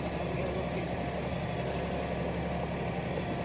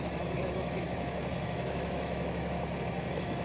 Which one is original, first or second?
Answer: first